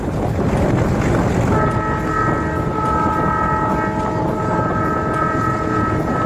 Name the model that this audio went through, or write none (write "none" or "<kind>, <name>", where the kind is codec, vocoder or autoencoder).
none